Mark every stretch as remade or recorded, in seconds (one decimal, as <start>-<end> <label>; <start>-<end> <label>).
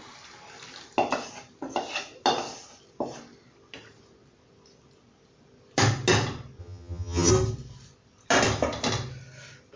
0.0-6.6 recorded; 6.6-7.3 remade; 7.3-9.8 recorded